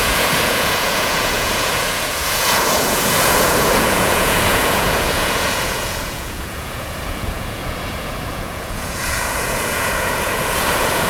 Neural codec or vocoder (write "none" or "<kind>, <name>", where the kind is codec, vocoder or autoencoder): vocoder, Vocos